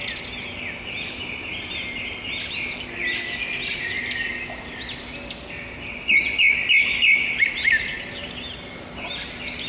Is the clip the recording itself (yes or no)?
yes